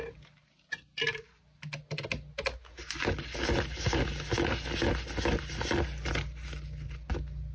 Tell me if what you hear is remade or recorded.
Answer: recorded